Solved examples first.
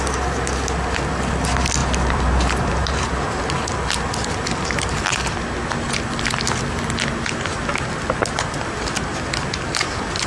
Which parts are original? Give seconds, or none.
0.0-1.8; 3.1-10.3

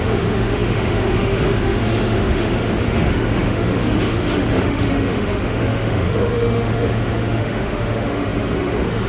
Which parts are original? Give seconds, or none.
none

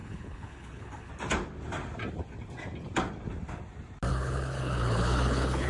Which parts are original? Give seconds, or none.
1.1-4.1